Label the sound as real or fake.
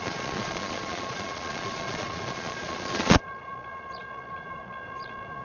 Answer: fake